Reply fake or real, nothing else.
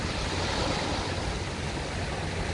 real